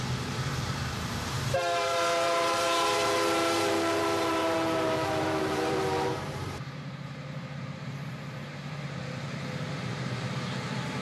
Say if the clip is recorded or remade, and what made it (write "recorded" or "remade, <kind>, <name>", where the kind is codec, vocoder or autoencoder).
remade, vocoder, BigVGAN v2